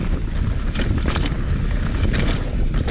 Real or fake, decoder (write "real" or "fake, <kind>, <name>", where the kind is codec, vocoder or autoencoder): real